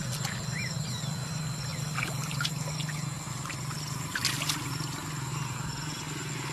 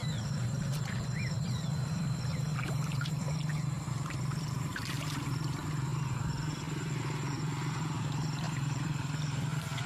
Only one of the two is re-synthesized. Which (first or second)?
second